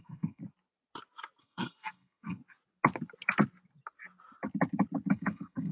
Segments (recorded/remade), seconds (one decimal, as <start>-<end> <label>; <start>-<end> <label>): 0.0-0.4 remade; 0.4-1.4 recorded; 1.4-2.4 remade; 2.4-5.1 recorded; 5.1-5.7 remade